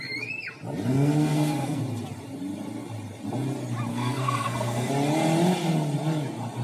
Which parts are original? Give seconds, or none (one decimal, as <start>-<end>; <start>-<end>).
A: 0.0-0.9; 1.8-3.9; 4.9-6.6